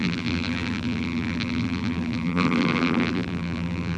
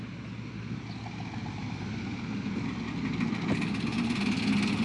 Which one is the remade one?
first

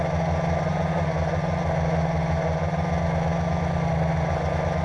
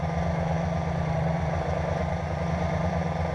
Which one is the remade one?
second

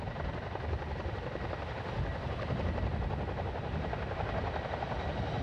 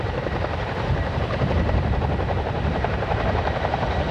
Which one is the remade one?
second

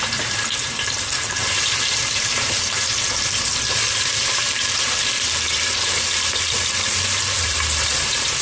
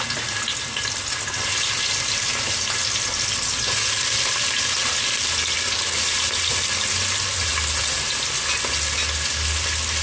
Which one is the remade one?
first